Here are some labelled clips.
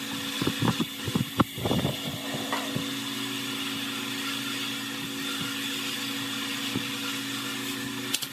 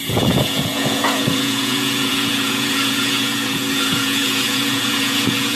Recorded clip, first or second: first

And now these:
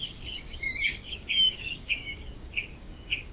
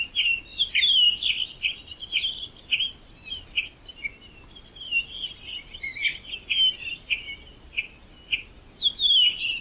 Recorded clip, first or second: second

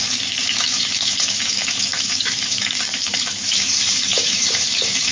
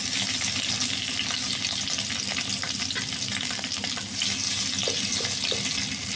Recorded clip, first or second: second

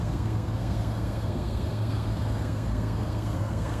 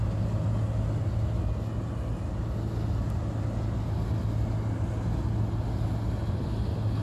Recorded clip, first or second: second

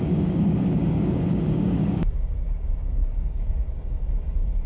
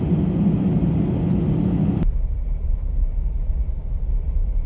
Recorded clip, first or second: second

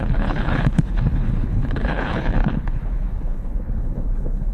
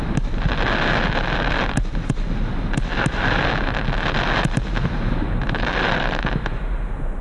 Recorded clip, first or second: second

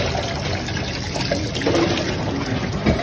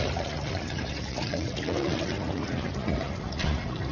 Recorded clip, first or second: first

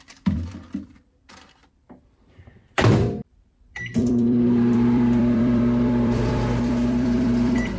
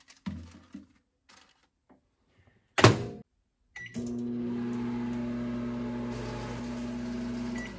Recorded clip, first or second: second